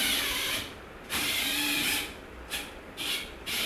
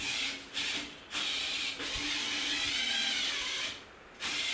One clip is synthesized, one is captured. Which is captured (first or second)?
second